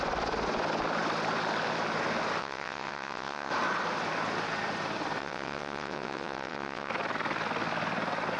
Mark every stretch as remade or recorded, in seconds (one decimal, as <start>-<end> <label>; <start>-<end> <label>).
0.0-2.4 recorded; 2.4-3.5 remade; 3.5-5.2 recorded; 5.2-6.9 remade; 6.9-8.4 recorded